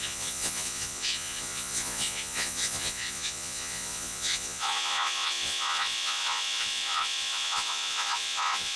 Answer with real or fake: fake